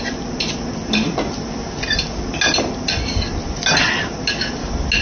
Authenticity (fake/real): real